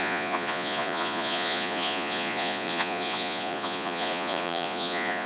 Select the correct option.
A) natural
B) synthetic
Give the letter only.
B